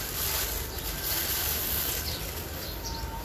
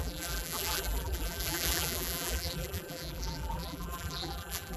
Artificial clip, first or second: second